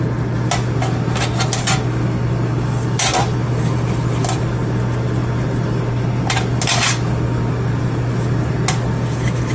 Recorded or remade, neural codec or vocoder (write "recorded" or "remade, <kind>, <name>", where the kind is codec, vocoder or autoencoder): recorded